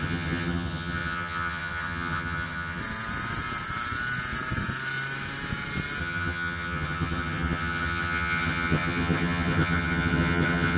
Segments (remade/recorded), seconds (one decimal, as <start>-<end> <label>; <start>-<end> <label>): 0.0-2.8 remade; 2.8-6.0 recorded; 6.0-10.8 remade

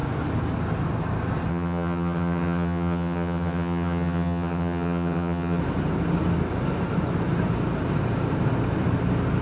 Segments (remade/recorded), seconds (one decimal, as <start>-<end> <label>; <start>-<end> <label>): 0.0-1.5 recorded; 1.5-5.6 remade; 5.6-9.4 recorded

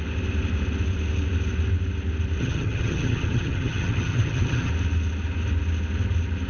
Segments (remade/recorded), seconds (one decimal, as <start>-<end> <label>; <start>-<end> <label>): 0.0-2.4 recorded; 2.4-4.7 remade; 4.7-6.5 recorded

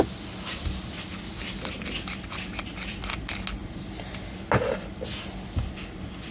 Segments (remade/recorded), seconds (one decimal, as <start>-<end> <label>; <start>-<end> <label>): 0.0-6.3 recorded

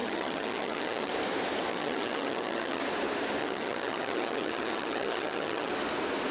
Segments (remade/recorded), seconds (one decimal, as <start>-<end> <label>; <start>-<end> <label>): 0.0-1.1 remade; 1.1-1.7 recorded; 1.7-2.8 remade; 2.8-3.4 recorded; 3.4-5.7 remade; 5.7-6.3 recorded

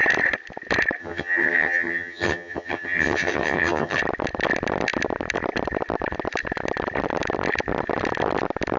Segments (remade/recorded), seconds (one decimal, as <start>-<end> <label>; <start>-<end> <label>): 0.0-1.0 recorded; 1.0-4.0 remade; 4.0-8.8 recorded

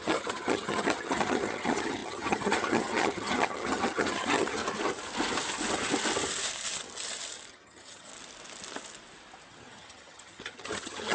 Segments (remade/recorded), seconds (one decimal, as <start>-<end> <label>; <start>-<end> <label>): 0.0-4.6 remade; 4.6-7.5 recorded; 7.5-8.1 remade; 8.1-9.5 recorded; 9.5-11.1 remade